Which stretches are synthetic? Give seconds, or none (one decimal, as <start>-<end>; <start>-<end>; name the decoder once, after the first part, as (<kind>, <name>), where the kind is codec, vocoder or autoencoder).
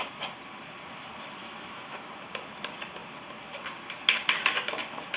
1.4-2.1 (autoencoder, DAC-VAE)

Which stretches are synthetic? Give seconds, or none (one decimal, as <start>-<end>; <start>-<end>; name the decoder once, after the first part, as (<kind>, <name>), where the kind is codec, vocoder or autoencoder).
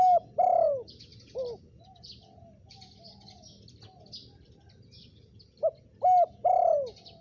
none